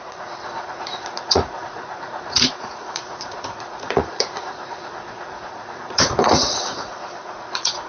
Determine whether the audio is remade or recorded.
remade